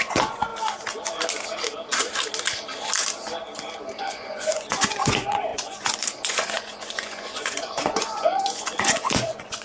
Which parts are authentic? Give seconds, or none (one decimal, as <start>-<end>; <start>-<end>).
0.5-4.0